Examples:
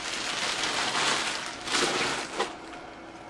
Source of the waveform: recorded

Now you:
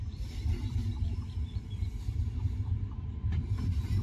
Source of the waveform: remade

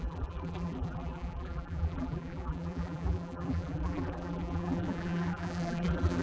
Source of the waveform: remade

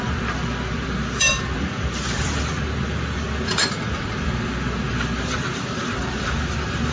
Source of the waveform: remade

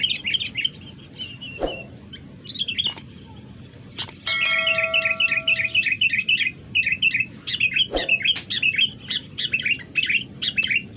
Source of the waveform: recorded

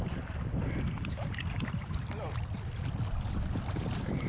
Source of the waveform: recorded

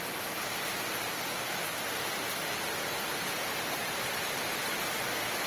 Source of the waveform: recorded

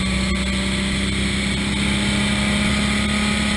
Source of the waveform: recorded